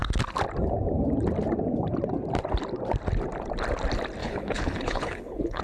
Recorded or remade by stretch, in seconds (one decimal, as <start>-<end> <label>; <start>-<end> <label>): 0.0-4.2 recorded; 4.2-5.6 remade

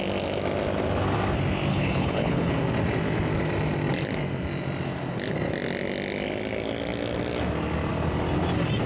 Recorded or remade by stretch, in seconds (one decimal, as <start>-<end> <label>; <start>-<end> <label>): 0.0-1.7 recorded; 1.7-2.5 remade; 2.5-8.9 recorded

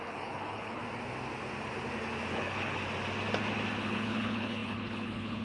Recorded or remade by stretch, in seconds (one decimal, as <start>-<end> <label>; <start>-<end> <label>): 0.0-0.8 remade; 0.8-2.3 recorded; 2.3-2.8 remade; 2.8-3.8 recorded; 3.8-5.4 remade